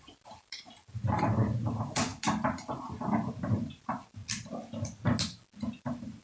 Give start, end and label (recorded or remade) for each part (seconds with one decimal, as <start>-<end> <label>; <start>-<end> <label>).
0.0-4.2 remade; 4.2-5.8 recorded; 5.8-6.2 remade